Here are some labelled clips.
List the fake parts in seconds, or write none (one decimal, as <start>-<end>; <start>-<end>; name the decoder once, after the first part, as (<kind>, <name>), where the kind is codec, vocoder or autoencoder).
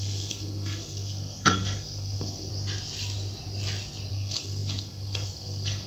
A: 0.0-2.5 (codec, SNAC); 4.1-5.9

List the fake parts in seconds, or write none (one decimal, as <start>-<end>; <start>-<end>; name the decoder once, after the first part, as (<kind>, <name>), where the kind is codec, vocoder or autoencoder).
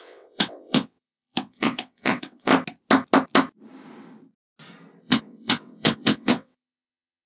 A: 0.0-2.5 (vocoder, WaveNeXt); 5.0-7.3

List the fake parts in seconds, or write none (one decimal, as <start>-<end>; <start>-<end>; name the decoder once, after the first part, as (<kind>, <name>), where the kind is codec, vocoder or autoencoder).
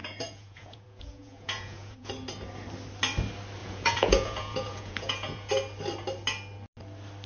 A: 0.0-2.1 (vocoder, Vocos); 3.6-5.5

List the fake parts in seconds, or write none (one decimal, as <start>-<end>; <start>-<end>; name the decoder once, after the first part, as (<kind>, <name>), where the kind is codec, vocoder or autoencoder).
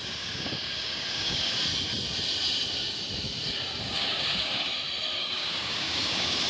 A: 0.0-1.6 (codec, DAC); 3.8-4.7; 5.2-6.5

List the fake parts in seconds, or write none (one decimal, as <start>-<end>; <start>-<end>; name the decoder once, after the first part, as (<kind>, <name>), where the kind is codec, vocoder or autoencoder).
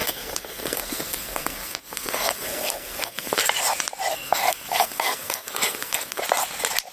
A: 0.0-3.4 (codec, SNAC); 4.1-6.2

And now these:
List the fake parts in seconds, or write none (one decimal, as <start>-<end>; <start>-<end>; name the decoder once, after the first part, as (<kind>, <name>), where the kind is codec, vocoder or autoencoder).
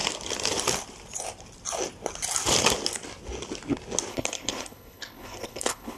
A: 4.1-6.0 (codec, HILCodec)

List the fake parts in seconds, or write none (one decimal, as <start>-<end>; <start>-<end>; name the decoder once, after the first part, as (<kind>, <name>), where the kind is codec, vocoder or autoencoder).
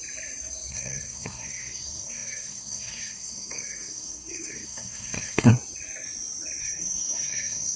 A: 0.7-5.5 (codec, SNAC); 6.6-7.8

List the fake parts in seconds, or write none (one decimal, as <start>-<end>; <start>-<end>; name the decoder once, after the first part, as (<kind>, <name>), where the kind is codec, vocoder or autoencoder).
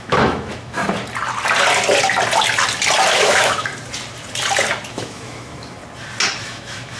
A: 0.0-0.8 (autoencoder, DAC-VAE); 3.1-3.7; 4.9-5.8; 6.4-7.0